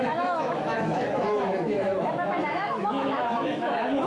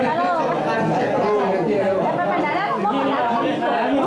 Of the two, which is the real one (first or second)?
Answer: second